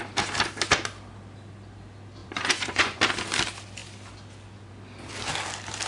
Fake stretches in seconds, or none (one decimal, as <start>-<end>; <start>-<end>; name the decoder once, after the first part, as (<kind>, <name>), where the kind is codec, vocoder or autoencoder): 2.2-3.0 (vocoder, Vocos)